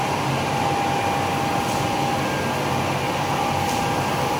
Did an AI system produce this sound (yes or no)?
no